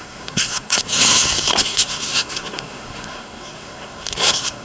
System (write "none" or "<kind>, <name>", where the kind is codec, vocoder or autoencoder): codec, SNAC